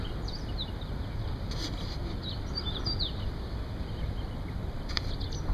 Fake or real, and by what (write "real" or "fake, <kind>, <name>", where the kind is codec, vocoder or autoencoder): fake, vocoder, BigVGAN v2